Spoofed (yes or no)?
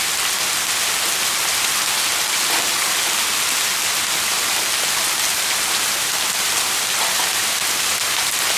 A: no